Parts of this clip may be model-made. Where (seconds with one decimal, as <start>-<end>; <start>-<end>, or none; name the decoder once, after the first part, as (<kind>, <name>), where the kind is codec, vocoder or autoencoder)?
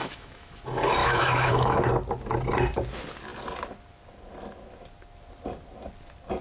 0.0-0.5 (autoencoder, DAC-VAE); 1.0-1.9